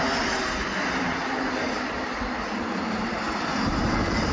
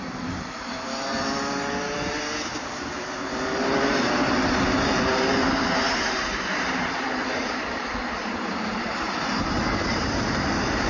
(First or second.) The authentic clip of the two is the first